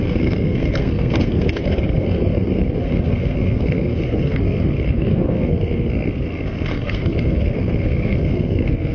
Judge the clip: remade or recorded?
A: remade